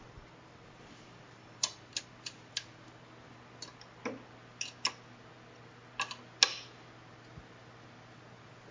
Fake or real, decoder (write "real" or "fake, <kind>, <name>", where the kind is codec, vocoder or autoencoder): real